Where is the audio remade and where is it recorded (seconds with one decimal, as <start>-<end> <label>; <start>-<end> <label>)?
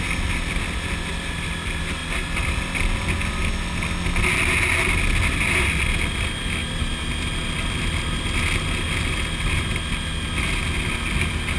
0.0-11.6 recorded